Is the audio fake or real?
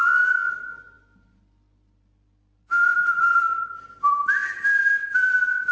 real